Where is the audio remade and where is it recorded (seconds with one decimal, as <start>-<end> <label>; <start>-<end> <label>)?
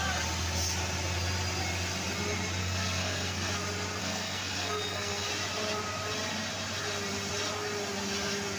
0.0-2.6 recorded; 2.6-3.5 remade; 3.5-4.0 recorded; 4.0-5.3 remade; 5.3-8.6 recorded